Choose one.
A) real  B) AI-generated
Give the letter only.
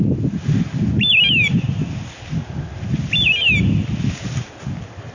A